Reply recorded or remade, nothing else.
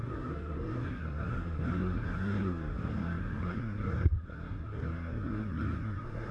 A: remade